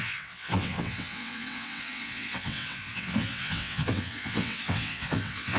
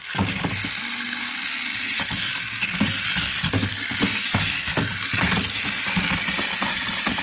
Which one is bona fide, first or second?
second